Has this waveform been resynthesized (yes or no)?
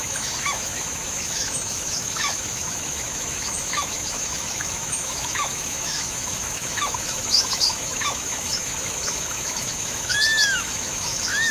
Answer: yes